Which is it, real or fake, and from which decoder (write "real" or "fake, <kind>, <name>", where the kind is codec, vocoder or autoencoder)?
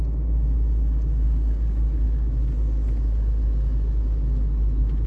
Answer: real